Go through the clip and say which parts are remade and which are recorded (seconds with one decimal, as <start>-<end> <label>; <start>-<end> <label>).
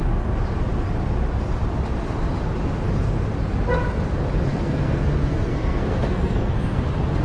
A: 0.0-4.5 recorded; 4.5-6.8 remade; 6.8-7.2 recorded